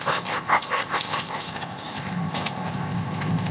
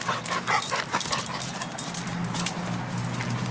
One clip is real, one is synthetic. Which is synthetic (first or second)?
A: first